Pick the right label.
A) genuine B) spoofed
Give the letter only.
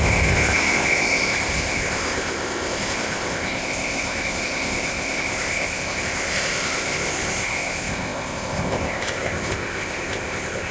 B